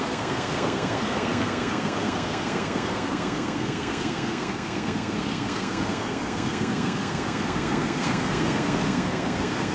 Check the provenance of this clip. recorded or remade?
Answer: remade